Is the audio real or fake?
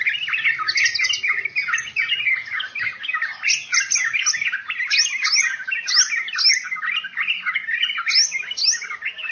real